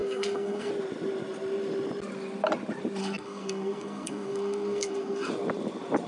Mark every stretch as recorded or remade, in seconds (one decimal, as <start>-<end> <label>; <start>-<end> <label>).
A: 0.0-0.7 remade; 0.7-3.0 recorded; 3.0-5.3 remade; 5.3-6.1 recorded